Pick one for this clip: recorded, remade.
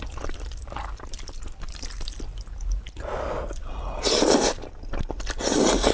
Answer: recorded